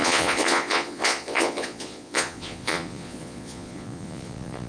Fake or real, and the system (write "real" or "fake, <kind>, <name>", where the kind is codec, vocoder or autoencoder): fake, vocoder, Vocos